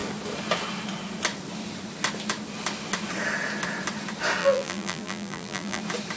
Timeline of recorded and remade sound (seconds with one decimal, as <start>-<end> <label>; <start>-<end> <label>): 0.0-4.4 recorded; 4.4-5.8 remade; 5.8-6.2 recorded